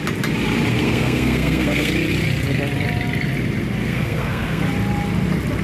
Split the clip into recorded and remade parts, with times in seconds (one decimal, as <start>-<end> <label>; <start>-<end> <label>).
0.0-0.7 recorded; 0.7-1.9 remade; 1.9-3.8 recorded; 3.8-4.6 remade; 4.6-5.6 recorded